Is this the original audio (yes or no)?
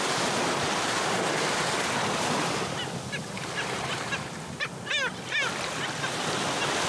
yes